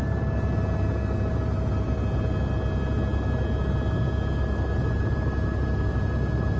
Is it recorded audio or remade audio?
recorded